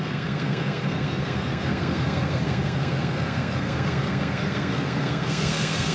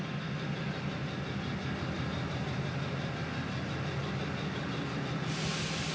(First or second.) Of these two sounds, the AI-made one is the first